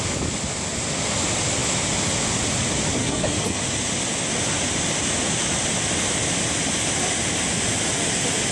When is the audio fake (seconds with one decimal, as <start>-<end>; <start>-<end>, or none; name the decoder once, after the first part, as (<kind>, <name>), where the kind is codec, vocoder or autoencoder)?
3.0-3.6 (codec, SNAC)